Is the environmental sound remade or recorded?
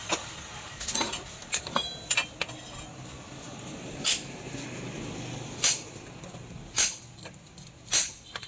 recorded